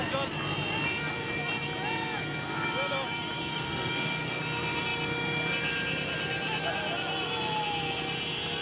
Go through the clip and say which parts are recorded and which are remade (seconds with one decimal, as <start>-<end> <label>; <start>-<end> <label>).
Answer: 0.0-3.5 recorded; 3.5-4.4 remade; 4.4-8.6 recorded